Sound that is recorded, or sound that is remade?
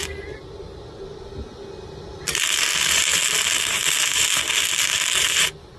recorded